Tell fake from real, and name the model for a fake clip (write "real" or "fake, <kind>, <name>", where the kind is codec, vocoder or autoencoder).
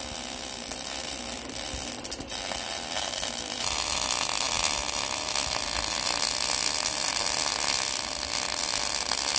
real